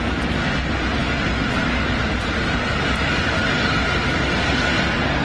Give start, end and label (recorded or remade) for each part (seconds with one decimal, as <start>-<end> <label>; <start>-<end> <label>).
0.0-5.2 recorded